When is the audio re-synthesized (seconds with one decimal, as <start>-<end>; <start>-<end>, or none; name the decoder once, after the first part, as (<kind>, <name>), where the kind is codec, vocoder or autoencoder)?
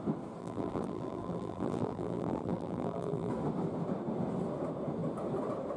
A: 0.4-3.3 (vocoder, BigVGAN v2)